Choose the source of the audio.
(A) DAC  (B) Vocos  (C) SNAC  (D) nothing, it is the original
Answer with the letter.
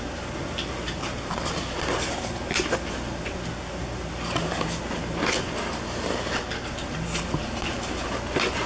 D